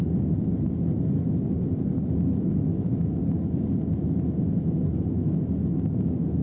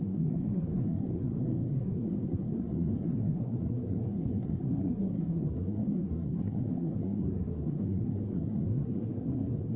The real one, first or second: first